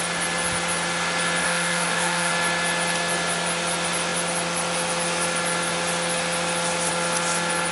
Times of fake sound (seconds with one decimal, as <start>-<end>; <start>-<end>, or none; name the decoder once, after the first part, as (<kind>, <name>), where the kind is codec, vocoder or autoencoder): 1.4-2.3 (autoencoder, DAC-VAE)